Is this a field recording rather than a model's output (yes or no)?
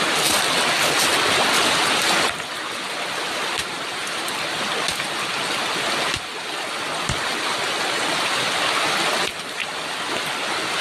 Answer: yes